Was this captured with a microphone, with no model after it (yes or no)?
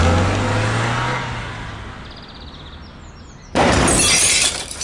yes